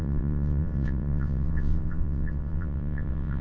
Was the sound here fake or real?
fake